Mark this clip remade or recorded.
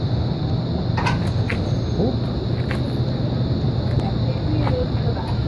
recorded